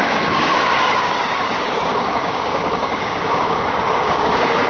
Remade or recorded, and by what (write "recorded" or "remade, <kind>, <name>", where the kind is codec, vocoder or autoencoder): remade, codec, DAC